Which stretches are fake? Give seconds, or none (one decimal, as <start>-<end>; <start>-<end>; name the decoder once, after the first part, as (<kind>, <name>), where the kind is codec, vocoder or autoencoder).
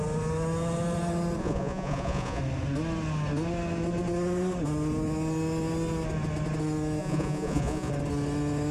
1.4-2.4 (vocoder, Vocos); 7.0-7.9